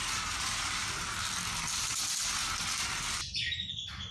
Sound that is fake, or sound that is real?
real